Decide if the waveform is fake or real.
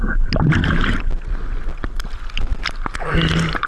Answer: real